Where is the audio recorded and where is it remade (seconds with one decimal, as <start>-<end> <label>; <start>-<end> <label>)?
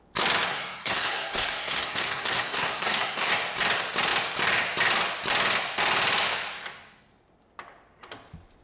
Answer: 0.0-0.5 recorded; 0.5-3.3 remade; 3.3-8.6 recorded